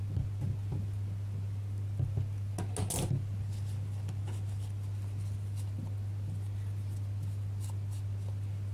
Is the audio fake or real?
real